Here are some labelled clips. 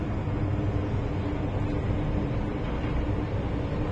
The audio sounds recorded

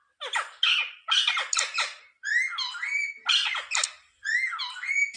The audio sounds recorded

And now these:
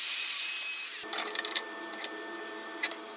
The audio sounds recorded